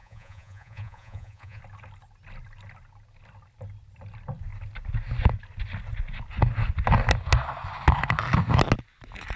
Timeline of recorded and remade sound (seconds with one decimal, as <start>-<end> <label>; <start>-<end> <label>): 0.0-1.6 remade; 1.6-9.4 recorded